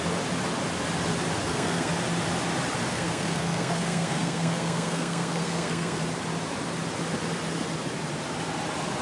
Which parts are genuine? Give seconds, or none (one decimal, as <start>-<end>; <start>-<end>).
0.0-1.4; 1.9-2.9; 6.0-9.0